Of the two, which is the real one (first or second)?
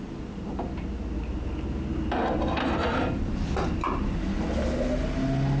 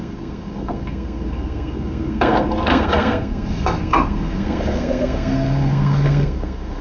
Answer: first